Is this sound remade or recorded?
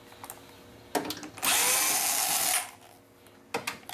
recorded